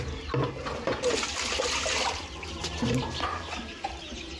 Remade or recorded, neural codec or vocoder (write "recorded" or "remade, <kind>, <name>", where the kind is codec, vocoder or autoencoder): recorded